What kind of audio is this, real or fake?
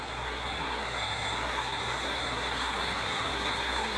fake